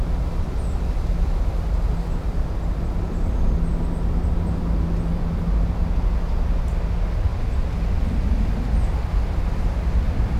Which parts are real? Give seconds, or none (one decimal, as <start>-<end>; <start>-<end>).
0.0-10.4